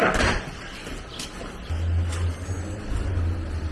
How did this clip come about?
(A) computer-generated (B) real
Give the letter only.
B